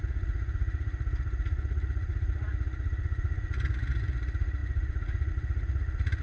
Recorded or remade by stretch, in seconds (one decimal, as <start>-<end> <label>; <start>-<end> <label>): 0.0-6.2 remade